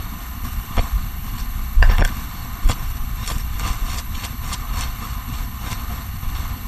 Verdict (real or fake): fake